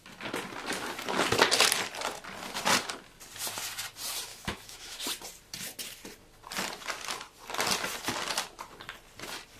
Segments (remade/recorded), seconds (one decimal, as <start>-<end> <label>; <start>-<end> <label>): 0.0-4.3 recorded; 4.3-5.0 remade; 5.0-9.6 recorded